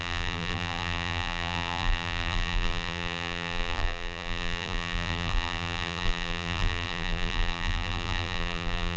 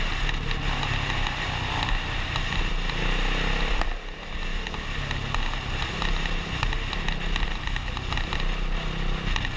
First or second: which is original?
second